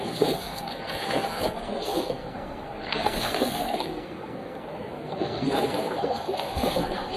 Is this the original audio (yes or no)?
no